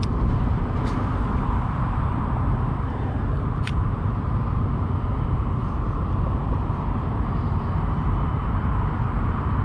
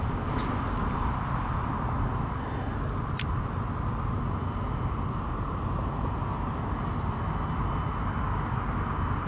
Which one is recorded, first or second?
second